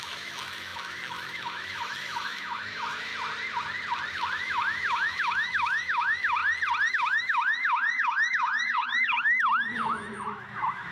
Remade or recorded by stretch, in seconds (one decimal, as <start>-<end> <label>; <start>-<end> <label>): 0.0-3.1 remade; 3.1-4.1 recorded; 4.1-6.4 remade; 6.4-6.9 recorded; 6.9-10.9 remade